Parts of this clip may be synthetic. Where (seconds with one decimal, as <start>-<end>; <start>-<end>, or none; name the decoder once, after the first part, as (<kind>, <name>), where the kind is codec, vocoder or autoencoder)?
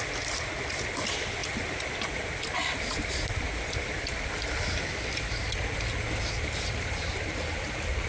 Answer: none